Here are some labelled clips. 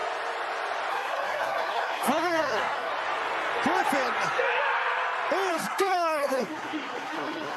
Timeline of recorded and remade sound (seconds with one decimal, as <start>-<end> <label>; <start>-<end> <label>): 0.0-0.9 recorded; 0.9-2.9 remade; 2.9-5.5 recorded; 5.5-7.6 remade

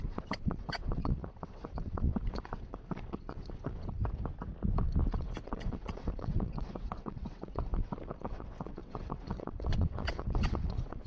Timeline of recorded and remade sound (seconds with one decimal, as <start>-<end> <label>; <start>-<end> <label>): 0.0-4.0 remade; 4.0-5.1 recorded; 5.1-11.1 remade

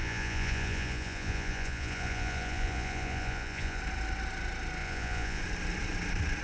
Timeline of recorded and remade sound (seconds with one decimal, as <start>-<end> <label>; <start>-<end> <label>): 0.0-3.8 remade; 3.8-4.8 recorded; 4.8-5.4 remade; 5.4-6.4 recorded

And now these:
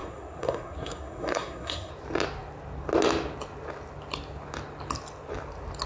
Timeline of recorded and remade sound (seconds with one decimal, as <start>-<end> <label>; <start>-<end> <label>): 0.0-1.9 remade; 1.9-5.9 recorded

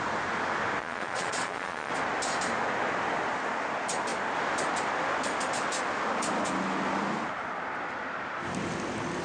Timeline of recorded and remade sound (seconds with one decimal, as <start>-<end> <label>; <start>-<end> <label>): 0.0-0.8 recorded; 0.8-1.9 remade; 1.9-9.2 recorded

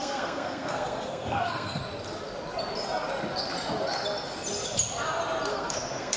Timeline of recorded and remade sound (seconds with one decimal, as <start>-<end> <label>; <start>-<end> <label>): 0.0-1.8 remade; 1.8-5.5 recorded; 5.5-6.2 remade

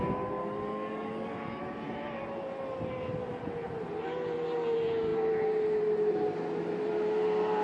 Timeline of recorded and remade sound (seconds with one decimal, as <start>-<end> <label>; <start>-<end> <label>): 0.0-0.4 recorded; 0.4-1.6 remade; 1.6-7.6 recorded

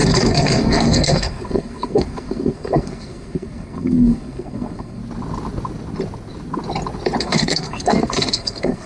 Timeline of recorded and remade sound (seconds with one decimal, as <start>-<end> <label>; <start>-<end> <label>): 0.0-5.0 remade; 5.0-7.2 recorded; 7.2-8.9 remade